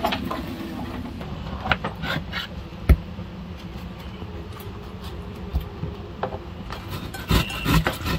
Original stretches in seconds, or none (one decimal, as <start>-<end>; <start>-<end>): 0.0-8.2